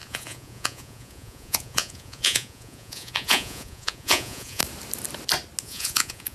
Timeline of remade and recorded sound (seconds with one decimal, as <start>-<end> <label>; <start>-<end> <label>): 0.0-4.6 remade; 4.6-5.6 recorded; 5.6-6.3 remade